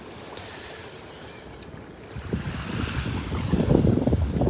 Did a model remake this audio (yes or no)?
no